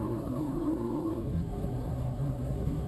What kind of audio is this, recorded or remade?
remade